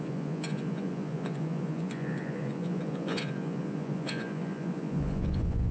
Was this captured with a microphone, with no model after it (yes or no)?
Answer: no